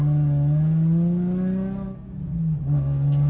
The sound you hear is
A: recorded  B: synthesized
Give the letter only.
A